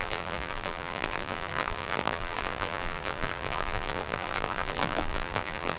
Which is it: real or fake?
fake